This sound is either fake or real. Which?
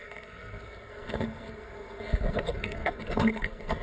fake